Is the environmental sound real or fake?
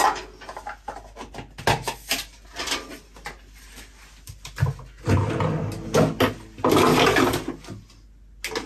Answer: real